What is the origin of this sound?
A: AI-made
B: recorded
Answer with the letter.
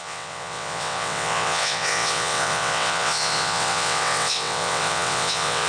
A